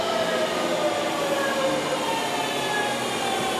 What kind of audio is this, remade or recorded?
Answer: recorded